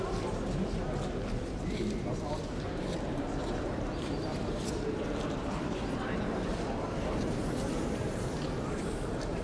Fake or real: fake